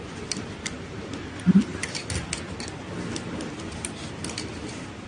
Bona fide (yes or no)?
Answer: yes